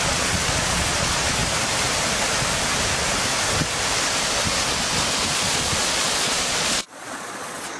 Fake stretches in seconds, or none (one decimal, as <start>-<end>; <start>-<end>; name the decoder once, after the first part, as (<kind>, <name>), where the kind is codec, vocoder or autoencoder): 0.0-1.4 (vocoder, Vocos); 5.3-7.8

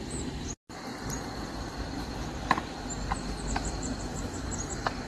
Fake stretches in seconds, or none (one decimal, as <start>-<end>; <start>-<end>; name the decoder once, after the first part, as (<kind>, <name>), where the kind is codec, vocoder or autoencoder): none

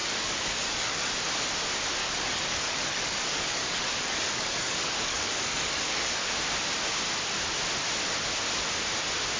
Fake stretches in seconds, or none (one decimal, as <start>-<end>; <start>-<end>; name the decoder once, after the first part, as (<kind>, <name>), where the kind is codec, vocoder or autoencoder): 0.0-1.1 (codec, DAC); 2.0-6.3

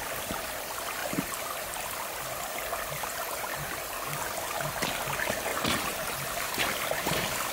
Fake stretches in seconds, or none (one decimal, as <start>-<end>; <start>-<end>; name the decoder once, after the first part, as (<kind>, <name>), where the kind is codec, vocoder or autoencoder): 5.5-6.6 (vocoder, BigVGAN v2)